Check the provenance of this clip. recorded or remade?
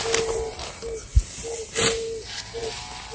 recorded